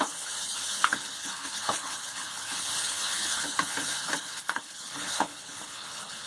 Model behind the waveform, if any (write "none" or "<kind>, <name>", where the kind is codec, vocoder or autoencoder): codec, HILCodec